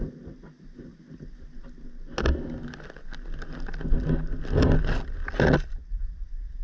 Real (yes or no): yes